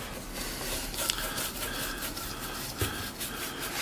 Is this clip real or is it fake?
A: real